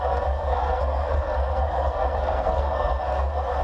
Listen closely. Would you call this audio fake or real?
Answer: fake